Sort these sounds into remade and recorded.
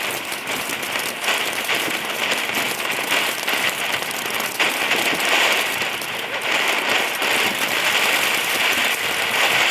recorded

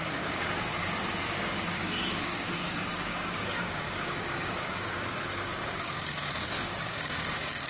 remade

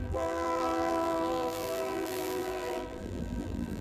remade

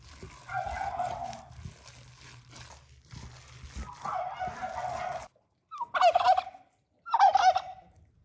recorded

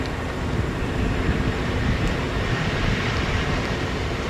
remade